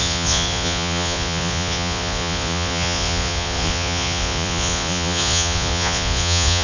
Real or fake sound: fake